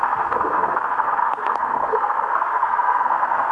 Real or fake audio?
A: fake